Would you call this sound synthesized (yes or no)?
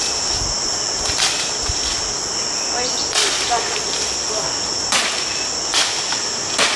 no